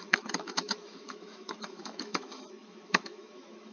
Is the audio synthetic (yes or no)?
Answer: yes